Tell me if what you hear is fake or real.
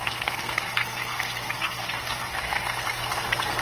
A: fake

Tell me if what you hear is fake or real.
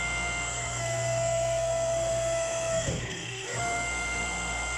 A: fake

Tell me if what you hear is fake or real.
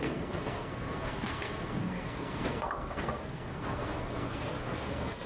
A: fake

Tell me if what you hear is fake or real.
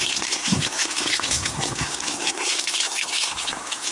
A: fake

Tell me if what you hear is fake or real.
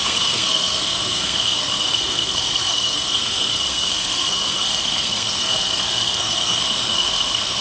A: fake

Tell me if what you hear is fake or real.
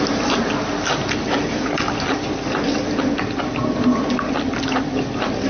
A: real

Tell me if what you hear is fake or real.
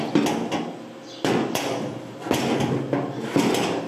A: real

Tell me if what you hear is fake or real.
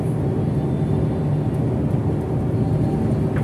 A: real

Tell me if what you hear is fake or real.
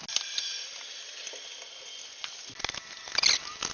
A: real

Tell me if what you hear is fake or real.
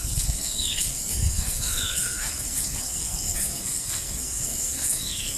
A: fake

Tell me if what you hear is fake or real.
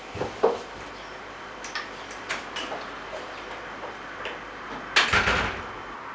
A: real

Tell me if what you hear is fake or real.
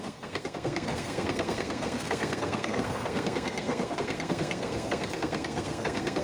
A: fake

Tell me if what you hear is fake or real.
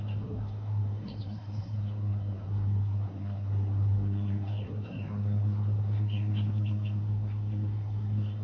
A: fake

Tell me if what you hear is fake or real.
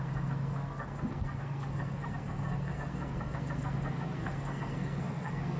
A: fake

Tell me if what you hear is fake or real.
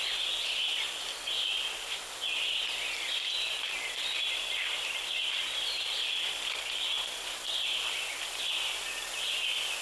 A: real